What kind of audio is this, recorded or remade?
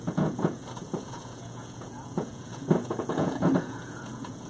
remade